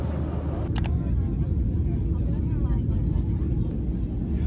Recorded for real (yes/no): yes